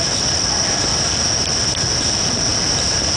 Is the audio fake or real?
real